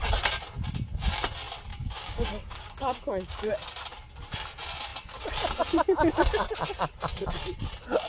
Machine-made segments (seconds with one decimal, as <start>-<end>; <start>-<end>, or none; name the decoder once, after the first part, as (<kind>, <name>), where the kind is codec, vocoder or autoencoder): 1.7-3.5 (codec, DAC)